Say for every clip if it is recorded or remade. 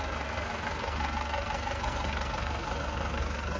remade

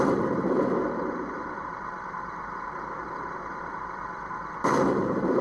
remade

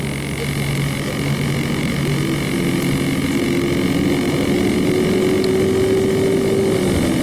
recorded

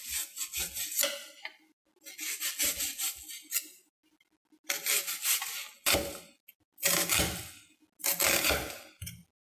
recorded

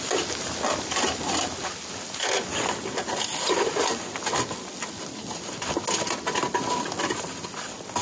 recorded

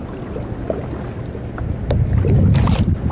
recorded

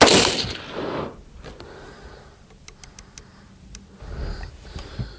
recorded